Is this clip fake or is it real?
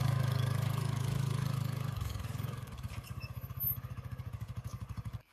fake